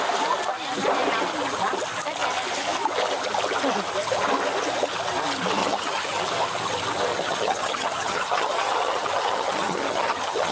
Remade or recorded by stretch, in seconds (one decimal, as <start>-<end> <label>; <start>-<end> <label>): 0.0-5.6 recorded; 5.6-6.2 remade; 6.2-7.1 recorded; 7.1-10.5 remade